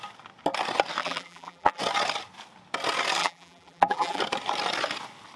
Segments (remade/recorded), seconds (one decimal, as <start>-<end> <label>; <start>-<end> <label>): 0.0-1.0 recorded; 1.0-1.8 remade; 1.8-3.2 recorded; 3.2-4.2 remade; 4.2-5.4 recorded